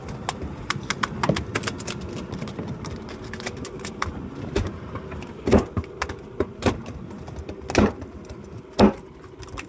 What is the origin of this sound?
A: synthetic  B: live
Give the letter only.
B